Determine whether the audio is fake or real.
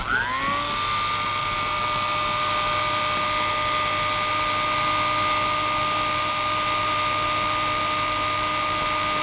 real